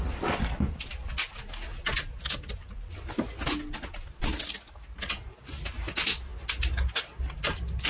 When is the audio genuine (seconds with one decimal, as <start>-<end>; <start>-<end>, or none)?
0.0-7.9